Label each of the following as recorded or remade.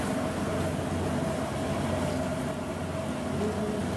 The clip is recorded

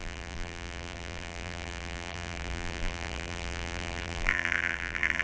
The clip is remade